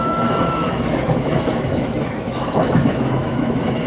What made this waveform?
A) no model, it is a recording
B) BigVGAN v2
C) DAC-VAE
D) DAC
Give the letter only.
C